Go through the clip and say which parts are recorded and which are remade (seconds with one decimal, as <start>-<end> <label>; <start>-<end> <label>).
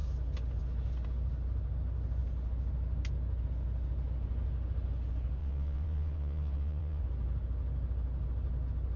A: 0.0-5.4 recorded; 5.4-7.0 remade; 7.0-9.0 recorded